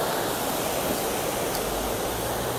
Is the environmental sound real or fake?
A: real